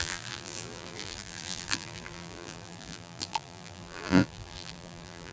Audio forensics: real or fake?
fake